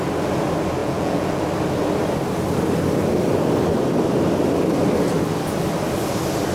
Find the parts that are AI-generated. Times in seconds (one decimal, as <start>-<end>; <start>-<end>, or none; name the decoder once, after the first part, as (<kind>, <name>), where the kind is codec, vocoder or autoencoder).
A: 0.8-1.4 (vocoder, Vocos)